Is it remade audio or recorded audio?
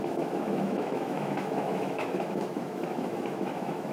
remade